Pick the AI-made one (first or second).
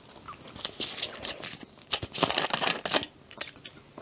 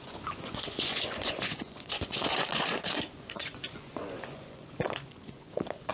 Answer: second